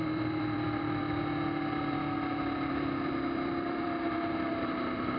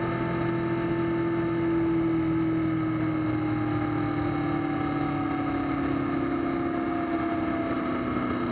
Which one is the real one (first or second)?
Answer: second